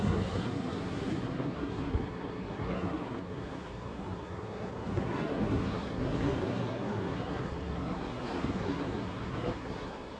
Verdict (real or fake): fake